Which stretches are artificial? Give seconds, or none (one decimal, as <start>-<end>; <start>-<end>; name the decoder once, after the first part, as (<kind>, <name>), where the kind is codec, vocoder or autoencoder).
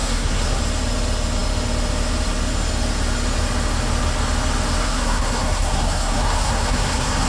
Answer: 0.0-0.6 (codec, SNAC); 4.8-7.3